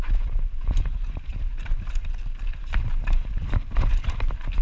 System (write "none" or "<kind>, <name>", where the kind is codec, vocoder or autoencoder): vocoder, BigVGAN v2